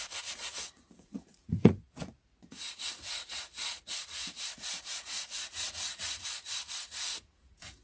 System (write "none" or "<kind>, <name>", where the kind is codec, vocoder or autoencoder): vocoder, Vocos